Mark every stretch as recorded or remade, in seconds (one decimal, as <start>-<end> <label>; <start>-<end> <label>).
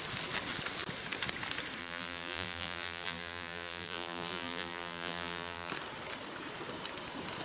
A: 0.0-1.8 recorded; 1.8-5.7 remade; 5.7-7.4 recorded